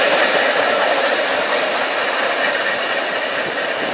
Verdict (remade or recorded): recorded